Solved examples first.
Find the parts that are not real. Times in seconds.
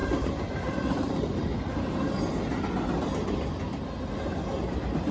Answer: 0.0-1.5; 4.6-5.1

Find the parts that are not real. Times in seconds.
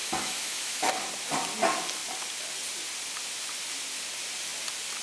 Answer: 0.0-0.9